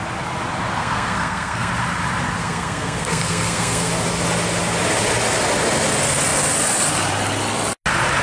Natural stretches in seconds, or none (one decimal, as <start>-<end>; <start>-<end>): 0.0-0.8; 1.7-2.4; 3.9-8.2